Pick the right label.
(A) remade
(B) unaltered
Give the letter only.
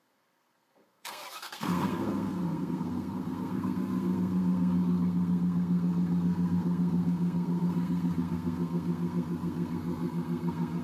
A